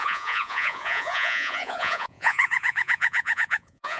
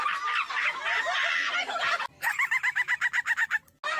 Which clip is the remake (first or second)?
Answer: first